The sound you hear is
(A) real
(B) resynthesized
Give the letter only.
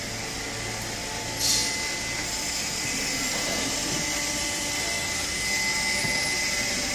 A